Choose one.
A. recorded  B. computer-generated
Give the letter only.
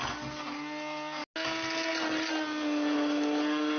A